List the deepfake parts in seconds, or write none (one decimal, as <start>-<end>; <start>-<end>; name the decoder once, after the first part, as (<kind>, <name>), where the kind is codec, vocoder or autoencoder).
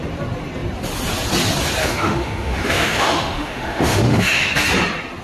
1.8-4.5 (autoencoder, DAC-VAE)